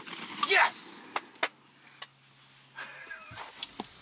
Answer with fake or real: real